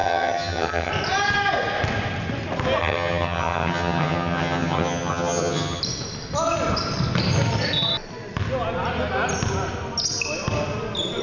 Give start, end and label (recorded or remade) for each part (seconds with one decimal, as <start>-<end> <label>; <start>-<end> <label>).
0.0-0.9 remade; 0.9-2.8 recorded; 2.8-5.8 remade; 5.8-11.2 recorded